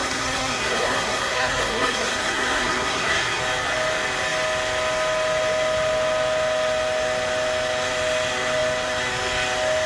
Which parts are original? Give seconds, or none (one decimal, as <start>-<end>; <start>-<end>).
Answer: 3.4-9.9